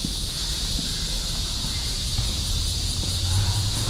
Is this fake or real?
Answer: fake